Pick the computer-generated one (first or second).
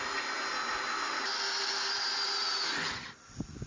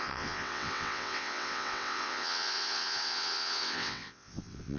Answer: second